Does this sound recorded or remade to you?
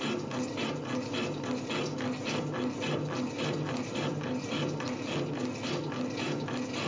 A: recorded